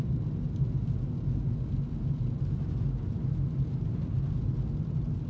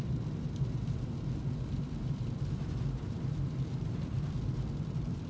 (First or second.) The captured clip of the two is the first